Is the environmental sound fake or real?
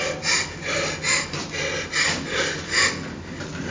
real